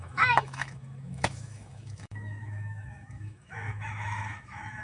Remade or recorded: remade